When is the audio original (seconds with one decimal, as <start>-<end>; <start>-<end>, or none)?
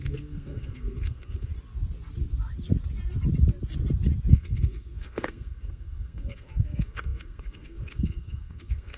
1.5-4.3